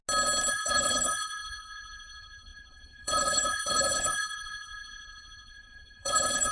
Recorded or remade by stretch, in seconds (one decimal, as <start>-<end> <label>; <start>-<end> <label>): 0.0-0.5 recorded; 0.5-6.5 remade